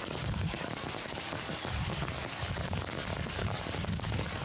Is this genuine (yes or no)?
no